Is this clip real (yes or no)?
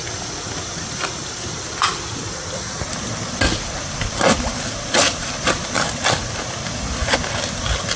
yes